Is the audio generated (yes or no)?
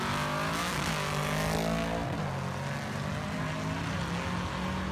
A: no